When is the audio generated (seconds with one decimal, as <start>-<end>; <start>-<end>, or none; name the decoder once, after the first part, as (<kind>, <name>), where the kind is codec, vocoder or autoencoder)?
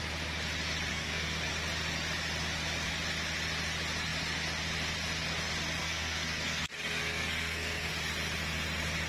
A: 0.9-1.5 (codec, SNAC); 5.8-7.9